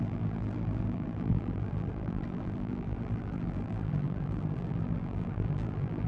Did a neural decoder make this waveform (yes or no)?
yes